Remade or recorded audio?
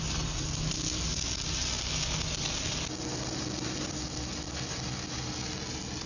recorded